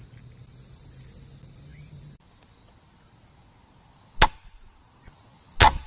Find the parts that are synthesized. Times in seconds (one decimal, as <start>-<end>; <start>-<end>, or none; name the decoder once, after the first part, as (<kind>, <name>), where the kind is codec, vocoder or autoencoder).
none